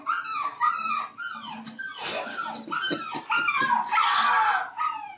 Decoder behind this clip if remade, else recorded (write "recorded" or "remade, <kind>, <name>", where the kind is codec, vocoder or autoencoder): recorded